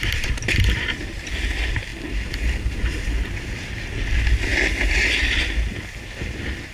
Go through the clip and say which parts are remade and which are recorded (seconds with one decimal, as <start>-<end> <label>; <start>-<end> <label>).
0.0-6.7 recorded